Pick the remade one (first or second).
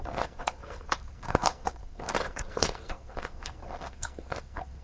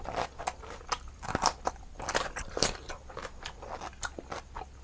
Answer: first